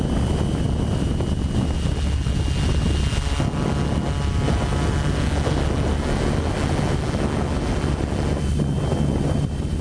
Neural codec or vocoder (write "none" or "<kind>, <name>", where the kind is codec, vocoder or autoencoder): none